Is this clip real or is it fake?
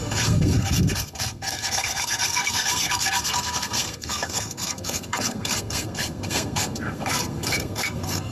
fake